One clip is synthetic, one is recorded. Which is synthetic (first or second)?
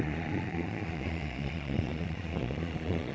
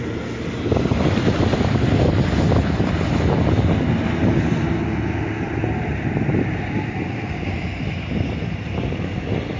first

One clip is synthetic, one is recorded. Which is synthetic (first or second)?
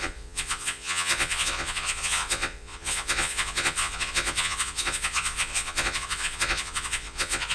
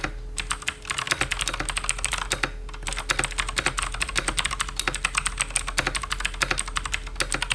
first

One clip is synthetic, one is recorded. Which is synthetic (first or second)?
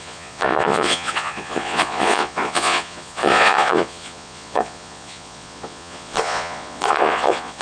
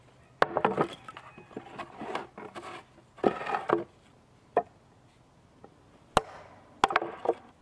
first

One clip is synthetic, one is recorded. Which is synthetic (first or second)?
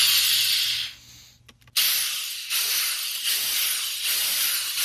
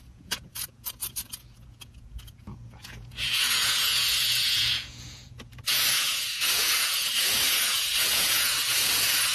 second